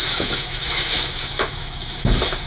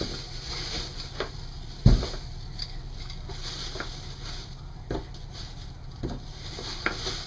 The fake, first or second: first